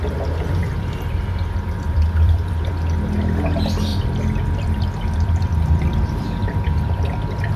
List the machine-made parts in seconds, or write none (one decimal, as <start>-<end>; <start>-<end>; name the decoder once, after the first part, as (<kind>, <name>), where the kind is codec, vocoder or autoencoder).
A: 0.6-2.7 (vocoder, BigVGAN v2); 3.9-6.4